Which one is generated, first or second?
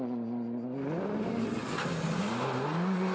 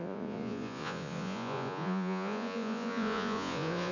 second